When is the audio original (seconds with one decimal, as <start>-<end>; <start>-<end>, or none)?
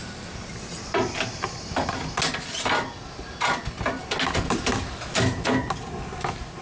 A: 0.0-6.6